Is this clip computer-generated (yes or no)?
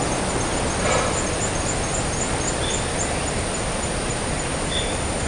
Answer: no